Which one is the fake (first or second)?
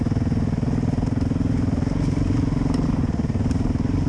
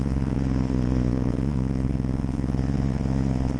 second